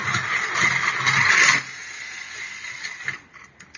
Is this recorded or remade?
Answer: recorded